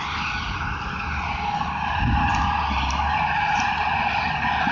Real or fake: real